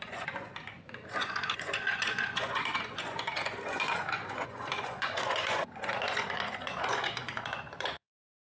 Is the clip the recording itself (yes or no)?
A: no